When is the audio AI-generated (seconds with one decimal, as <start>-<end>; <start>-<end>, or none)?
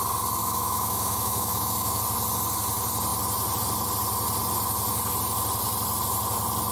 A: 0.4-2.0